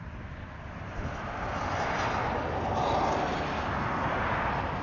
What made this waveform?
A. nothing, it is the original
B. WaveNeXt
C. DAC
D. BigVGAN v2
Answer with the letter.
A